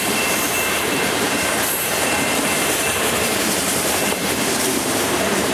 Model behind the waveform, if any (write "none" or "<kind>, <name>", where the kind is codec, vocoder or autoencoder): vocoder, BigVGAN v2